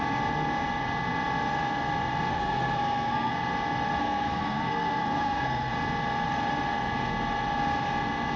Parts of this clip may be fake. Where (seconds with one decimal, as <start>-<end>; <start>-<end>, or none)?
2.3-3.3; 4.0-5.7